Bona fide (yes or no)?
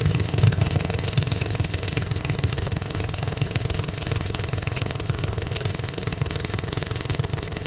no